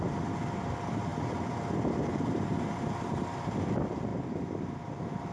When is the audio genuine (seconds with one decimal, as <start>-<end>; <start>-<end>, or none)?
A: 0.0-5.3